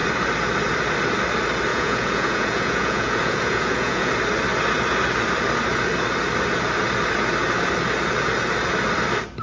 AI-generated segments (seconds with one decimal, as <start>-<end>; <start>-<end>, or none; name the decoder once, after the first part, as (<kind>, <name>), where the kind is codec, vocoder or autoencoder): 1.7-4.1 (vocoder, Vocos)